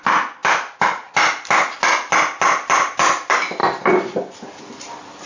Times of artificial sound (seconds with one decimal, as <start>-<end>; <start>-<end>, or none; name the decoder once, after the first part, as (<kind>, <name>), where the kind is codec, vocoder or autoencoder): 3.6-4.6 (vocoder, BigVGAN v2)